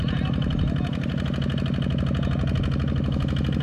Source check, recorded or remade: recorded